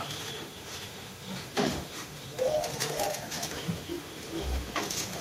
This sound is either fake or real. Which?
fake